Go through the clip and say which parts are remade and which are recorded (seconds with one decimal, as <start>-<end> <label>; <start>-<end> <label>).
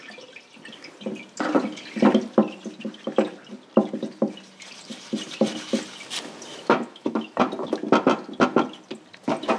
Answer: 0.0-6.5 recorded; 6.5-7.4 remade; 7.4-9.6 recorded